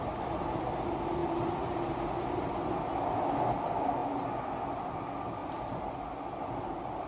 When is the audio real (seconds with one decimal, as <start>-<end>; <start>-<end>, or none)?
0.0-1.2; 1.9-5.4